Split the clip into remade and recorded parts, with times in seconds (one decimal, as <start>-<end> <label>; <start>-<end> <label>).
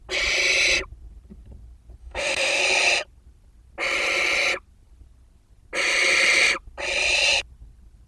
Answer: 0.0-2.0 recorded; 2.0-2.6 remade; 2.6-8.1 recorded